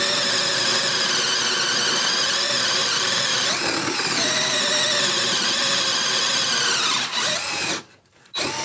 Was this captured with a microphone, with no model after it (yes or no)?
yes